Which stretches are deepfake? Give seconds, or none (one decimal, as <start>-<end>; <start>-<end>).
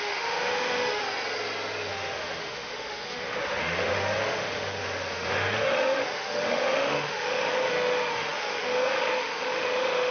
0.0-1.0; 1.9-10.1